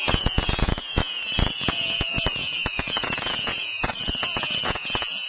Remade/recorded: remade